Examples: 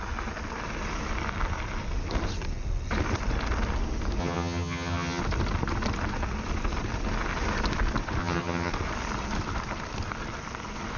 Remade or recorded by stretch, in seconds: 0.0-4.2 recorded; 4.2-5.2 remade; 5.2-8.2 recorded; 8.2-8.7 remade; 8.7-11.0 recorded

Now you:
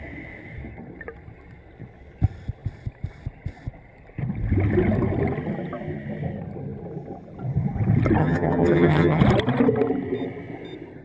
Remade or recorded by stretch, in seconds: 0.0-8.2 recorded; 8.2-9.2 remade; 9.2-11.0 recorded

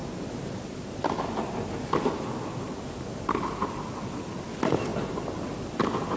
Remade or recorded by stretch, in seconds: 0.0-6.2 recorded